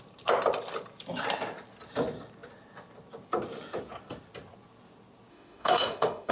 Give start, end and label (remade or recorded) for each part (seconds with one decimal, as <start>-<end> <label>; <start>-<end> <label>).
0.0-5.3 recorded; 5.3-6.3 remade